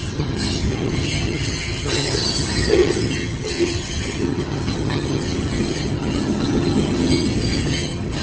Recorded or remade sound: remade